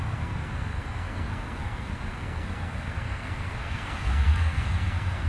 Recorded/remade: remade